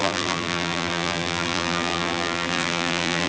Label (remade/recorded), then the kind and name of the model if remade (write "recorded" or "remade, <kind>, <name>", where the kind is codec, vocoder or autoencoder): remade, vocoder, BigVGAN v2